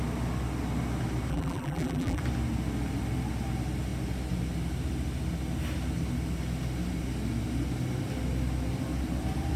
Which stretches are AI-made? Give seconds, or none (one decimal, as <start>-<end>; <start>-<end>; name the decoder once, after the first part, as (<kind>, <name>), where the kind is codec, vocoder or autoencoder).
1.3-2.2 (vocoder, BigVGAN v2)